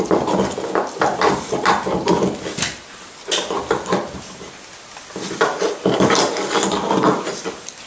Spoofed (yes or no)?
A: no